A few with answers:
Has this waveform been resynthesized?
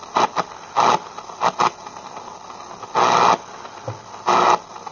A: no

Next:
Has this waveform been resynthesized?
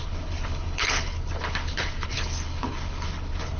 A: yes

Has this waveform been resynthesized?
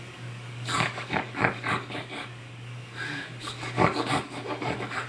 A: yes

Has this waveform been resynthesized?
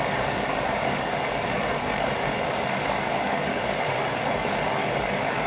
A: yes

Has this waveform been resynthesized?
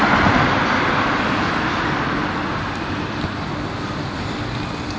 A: no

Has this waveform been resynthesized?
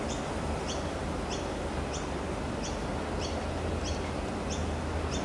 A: no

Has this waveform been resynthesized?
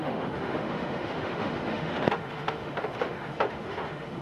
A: yes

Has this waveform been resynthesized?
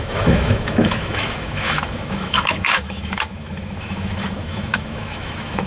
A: yes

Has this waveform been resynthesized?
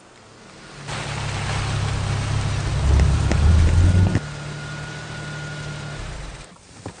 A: no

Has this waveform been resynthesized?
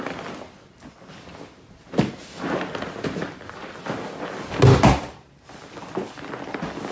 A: no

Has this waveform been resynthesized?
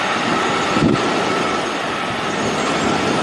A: no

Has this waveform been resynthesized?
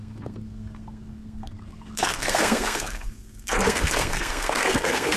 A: yes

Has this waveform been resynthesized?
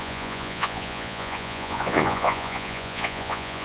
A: yes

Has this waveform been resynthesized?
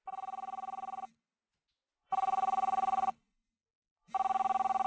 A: no